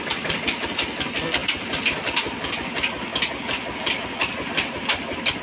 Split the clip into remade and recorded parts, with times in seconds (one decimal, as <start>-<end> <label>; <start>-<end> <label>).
0.0-5.4 recorded